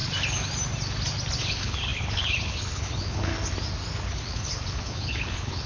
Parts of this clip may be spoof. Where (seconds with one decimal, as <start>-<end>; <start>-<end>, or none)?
1.4-3.3; 4.1-5.7